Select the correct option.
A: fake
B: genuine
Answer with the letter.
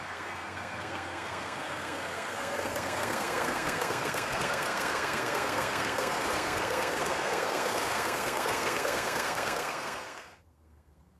A